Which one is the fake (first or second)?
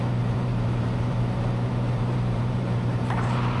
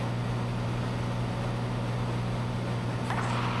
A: first